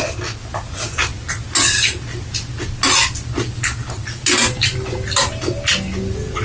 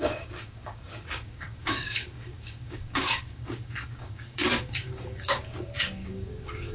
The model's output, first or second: second